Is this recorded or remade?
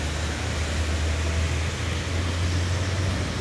recorded